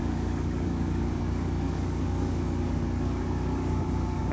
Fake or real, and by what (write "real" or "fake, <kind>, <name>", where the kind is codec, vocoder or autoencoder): fake, codec, DAC